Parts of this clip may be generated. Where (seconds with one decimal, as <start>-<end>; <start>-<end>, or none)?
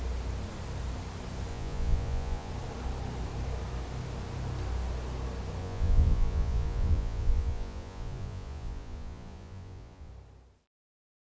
1.5-2.5; 5.6-10.1